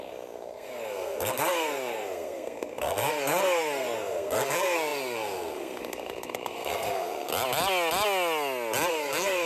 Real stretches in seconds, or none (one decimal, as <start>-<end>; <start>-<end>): 7.3-8.9